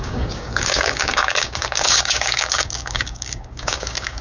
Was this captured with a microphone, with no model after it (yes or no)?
no